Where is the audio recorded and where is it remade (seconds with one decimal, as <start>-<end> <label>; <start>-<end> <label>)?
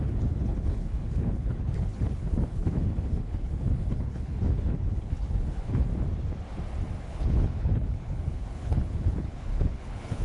0.0-5.9 remade; 5.9-7.0 recorded; 7.0-10.2 remade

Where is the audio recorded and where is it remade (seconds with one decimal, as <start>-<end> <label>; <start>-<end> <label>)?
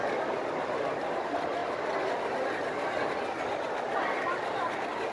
0.0-5.1 recorded